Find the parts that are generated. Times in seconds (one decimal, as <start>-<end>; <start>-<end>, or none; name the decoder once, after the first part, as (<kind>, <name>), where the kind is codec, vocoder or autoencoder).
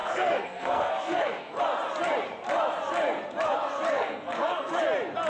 0.0-1.6 (codec, SNAC); 3.9-4.8